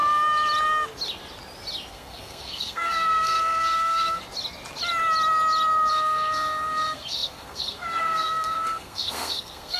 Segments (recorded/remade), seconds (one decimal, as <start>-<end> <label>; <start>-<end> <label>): 0.0-1.9 recorded; 1.9-4.2 remade; 4.2-5.9 recorded; 5.9-9.8 remade